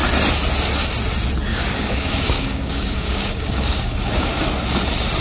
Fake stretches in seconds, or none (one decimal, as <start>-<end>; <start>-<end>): 1.5-4.4